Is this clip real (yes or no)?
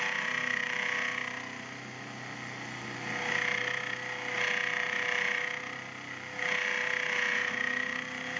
yes